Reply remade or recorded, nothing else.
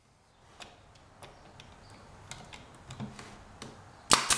recorded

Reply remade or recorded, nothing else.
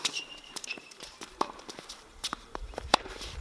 remade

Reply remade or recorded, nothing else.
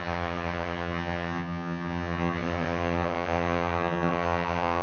remade